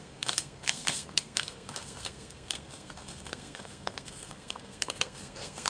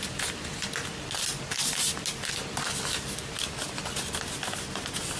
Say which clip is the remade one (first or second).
first